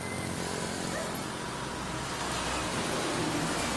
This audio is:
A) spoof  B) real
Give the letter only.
B